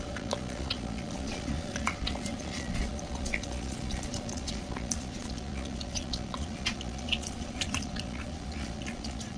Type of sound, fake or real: fake